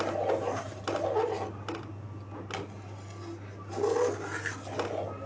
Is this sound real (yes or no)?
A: yes